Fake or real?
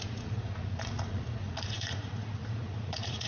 fake